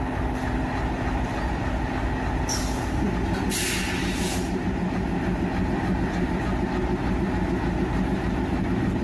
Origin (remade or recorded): recorded